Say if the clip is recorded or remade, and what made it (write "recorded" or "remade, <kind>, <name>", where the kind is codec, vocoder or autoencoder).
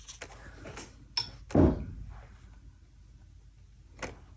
recorded